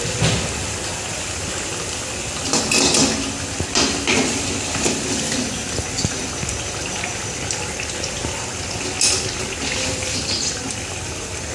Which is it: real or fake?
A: real